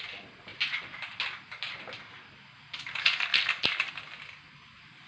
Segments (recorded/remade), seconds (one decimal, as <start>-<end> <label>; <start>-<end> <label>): 0.0-5.1 recorded